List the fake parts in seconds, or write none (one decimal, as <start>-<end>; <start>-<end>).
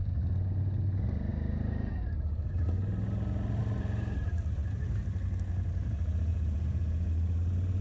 6.3-7.1